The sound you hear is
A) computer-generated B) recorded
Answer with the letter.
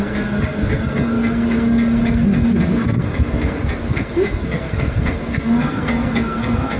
A